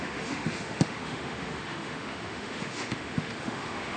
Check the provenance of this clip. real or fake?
fake